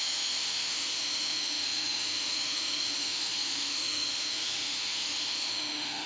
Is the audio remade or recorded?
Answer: remade